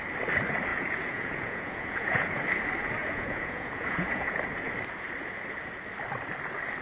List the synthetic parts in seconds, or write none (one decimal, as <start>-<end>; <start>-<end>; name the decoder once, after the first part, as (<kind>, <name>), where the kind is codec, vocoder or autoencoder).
0.7-2.4 (vocoder, Vocos); 3.0-4.4

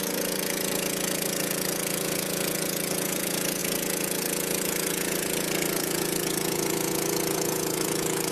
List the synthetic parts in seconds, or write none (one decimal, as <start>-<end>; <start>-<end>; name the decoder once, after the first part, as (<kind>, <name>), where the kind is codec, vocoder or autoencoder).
0.0-8.3 (vocoder, Vocos)

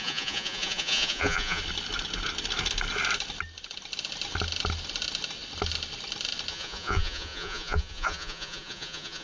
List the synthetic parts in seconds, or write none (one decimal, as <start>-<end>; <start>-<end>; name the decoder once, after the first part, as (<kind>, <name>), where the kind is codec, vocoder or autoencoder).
0.0-1.6 (vocoder, Vocos); 6.5-9.2

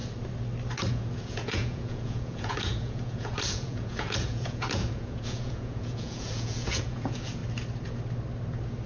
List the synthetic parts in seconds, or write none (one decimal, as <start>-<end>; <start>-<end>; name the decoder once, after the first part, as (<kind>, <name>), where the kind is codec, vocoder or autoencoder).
0.9-7.4 (vocoder, Vocos)

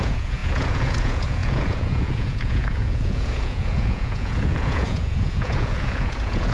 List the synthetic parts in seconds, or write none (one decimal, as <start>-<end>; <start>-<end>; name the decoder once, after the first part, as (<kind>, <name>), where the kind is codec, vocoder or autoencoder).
0.0-6.5 (vocoder, Vocos)

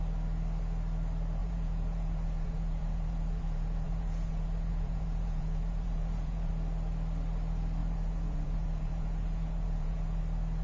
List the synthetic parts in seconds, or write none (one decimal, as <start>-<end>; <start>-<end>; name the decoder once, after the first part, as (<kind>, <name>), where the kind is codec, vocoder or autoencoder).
1.4-6.5 (vocoder, Vocos); 7.8-10.2

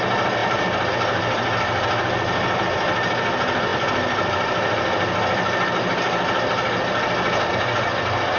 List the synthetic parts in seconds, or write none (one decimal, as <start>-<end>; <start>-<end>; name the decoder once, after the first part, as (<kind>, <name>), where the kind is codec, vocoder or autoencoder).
none